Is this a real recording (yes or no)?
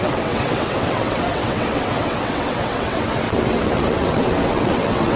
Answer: no